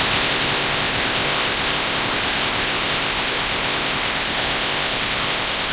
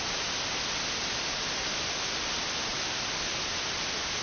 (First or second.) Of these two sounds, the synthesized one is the first